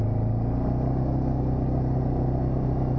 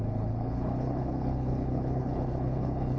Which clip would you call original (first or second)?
first